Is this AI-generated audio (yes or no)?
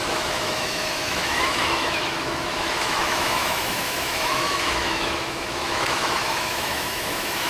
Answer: yes